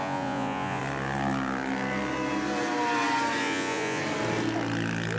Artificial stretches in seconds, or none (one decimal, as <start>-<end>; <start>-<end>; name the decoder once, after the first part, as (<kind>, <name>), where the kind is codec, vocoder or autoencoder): 0.0-0.8 (vocoder, Vocos); 3.4-4.0